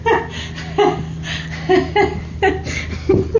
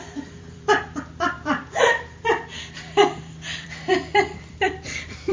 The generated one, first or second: second